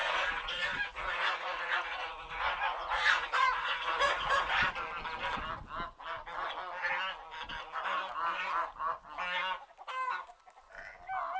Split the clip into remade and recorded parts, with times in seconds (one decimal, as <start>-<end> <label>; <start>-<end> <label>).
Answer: 0.0-4.5 remade; 4.5-11.4 recorded